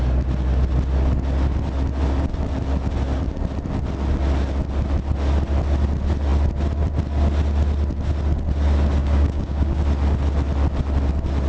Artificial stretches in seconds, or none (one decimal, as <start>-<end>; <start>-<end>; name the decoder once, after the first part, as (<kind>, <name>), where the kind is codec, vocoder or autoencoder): 9.0-9.8 (codec, DAC)